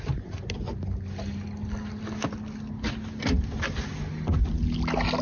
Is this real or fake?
real